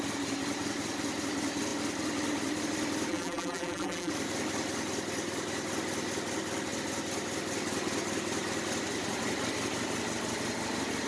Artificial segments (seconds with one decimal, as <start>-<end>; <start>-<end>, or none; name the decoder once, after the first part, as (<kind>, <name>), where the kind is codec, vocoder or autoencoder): 3.1-4.1 (vocoder, BigVGAN v2)